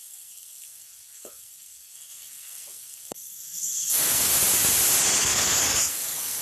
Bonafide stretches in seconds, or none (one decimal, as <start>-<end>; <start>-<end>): 4.3-5.2